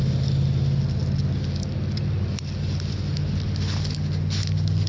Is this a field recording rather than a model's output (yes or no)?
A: yes